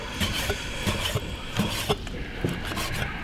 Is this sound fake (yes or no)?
no